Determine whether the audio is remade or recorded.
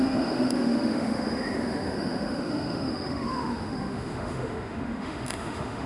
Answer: remade